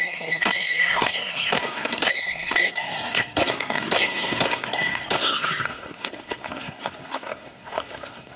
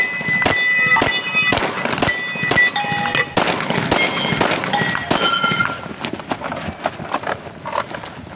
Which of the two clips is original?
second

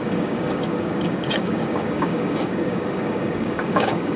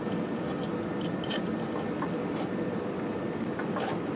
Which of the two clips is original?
second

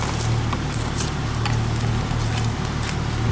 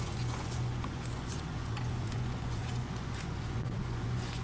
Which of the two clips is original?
first